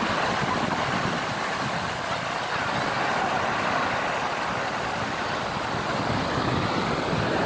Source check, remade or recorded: recorded